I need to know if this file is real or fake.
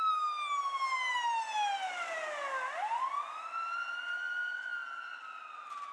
real